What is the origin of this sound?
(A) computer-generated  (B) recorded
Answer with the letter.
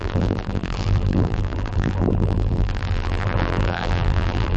A